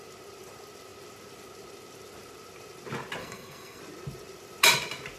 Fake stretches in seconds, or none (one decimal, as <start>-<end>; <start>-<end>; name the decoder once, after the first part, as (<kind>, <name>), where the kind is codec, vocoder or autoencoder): 3.2-3.8 (codec, SNAC)